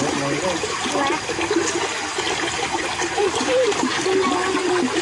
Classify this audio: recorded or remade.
recorded